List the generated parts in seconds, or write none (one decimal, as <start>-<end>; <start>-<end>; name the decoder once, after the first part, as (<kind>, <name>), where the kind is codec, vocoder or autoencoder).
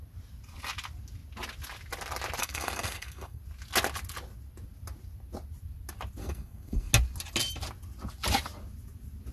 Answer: 2.4-3.4 (codec, SNAC); 6.2-6.9